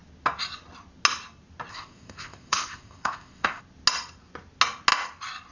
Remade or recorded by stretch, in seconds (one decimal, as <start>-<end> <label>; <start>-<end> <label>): 0.0-1.7 recorded; 1.7-3.6 remade; 3.6-5.5 recorded